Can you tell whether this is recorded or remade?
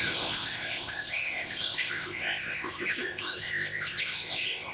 remade